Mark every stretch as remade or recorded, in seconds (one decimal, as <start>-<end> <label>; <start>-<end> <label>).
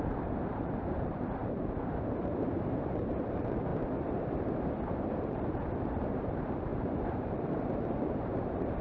0.0-3.7 remade; 3.7-5.0 recorded; 5.0-8.8 remade